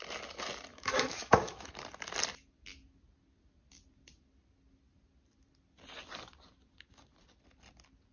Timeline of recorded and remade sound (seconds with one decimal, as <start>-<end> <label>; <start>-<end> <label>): 0.0-0.7 recorded; 0.7-1.7 remade; 1.7-8.1 recorded